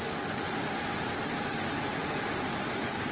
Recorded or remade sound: recorded